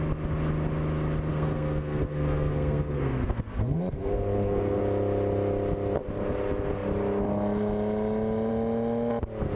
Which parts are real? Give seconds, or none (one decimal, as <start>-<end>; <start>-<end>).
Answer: 0.0-1.3; 4.8-9.6